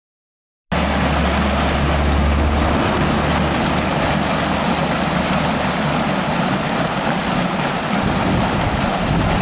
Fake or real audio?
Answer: real